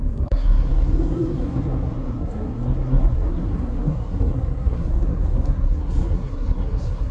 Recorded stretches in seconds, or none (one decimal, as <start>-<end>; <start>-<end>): none